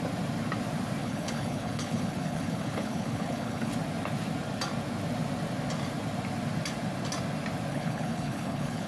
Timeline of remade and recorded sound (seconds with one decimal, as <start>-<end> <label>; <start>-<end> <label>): 0.0-1.0 recorded; 1.0-3.7 remade; 3.7-7.7 recorded; 7.7-8.9 remade